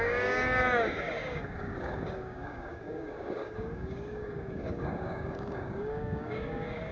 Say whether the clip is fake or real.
fake